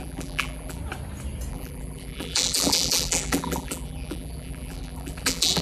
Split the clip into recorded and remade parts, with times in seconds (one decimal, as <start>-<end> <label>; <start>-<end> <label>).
0.0-0.8 remade; 0.8-1.5 recorded; 1.5-5.6 remade